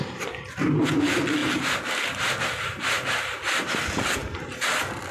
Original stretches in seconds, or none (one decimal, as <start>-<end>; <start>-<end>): 0.0-5.1